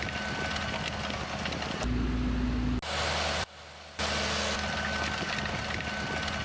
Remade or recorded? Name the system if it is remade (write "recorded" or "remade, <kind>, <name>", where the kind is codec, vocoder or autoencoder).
recorded